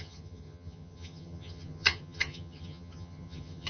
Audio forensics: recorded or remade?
remade